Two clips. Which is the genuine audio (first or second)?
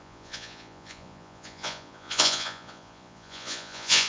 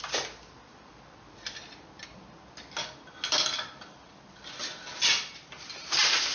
second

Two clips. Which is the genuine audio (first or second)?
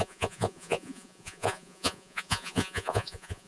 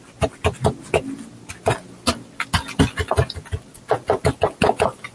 second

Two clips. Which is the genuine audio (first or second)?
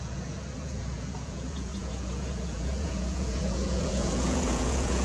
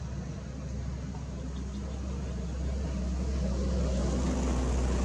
second